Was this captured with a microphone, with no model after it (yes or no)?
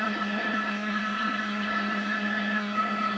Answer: no